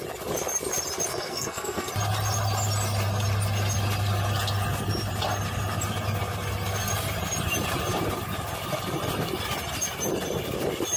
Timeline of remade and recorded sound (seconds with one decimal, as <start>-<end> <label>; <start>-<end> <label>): 0.0-1.1 recorded; 1.1-1.9 remade; 1.9-11.0 recorded